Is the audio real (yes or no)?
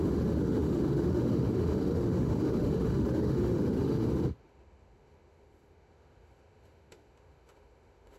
no